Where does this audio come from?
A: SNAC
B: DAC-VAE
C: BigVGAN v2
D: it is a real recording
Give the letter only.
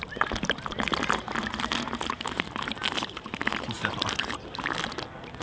D